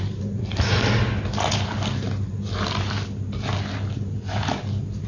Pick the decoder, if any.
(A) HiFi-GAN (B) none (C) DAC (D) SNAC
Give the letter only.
B